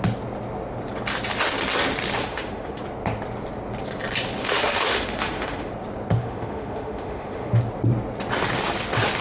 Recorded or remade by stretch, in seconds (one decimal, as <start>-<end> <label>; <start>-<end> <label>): 0.0-2.2 recorded; 2.2-2.8 remade; 2.8-4.4 recorded; 4.4-5.7 remade; 5.7-6.2 recorded; 6.2-7.6 remade; 7.6-9.2 recorded